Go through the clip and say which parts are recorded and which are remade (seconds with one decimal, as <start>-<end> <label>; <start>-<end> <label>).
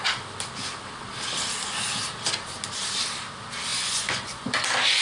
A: 0.0-3.7 recorded; 3.7-4.5 remade; 4.5-5.0 recorded